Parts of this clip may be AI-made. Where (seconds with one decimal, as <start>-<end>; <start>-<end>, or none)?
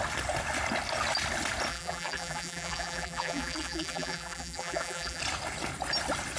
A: 1.7-5.2